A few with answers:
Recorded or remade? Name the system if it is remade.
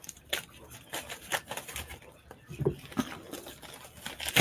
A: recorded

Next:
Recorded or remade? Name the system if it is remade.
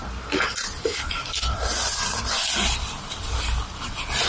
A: recorded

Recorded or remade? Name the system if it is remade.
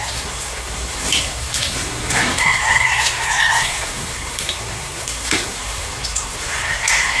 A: remade, codec, SNAC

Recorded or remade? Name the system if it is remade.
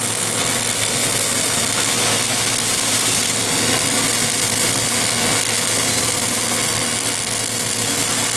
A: recorded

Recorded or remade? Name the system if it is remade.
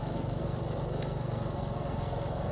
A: remade, codec, SNAC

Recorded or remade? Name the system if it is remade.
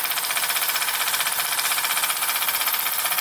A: recorded